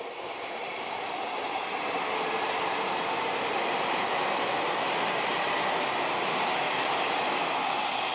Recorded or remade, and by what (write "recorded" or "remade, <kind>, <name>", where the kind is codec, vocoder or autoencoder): recorded